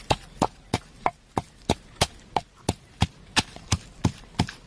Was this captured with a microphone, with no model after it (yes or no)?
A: yes